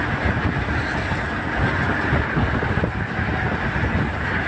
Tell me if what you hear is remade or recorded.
recorded